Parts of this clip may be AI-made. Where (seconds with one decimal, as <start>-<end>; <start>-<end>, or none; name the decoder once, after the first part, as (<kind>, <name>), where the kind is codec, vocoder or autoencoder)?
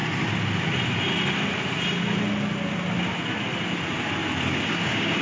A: 4.5-5.2 (codec, DAC)